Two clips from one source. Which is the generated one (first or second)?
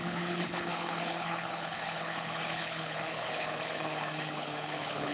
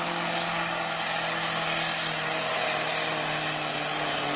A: first